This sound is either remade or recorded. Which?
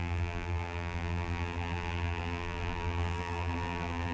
remade